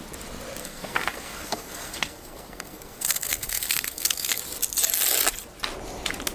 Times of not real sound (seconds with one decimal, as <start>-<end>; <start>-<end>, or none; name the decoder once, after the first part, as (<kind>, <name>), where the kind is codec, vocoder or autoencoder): 0.6-4.4 (codec, SNAC)